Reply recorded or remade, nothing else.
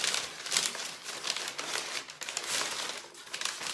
remade